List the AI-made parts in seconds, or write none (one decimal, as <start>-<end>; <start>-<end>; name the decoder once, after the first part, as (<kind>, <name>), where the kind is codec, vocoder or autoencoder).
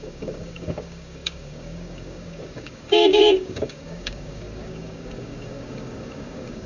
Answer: 0.0-6.7 (codec, DAC)